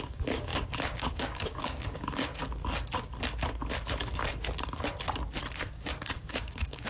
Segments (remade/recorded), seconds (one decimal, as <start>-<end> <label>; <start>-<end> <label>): 0.0-2.4 remade; 2.4-5.7 recorded; 5.7-6.9 remade